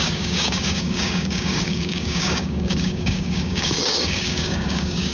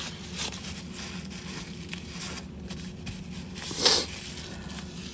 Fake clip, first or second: first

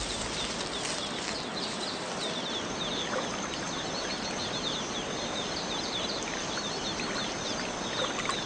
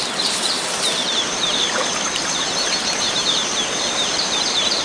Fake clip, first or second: second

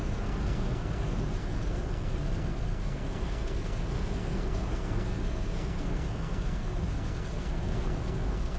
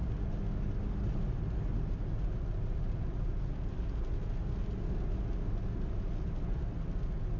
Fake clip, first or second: first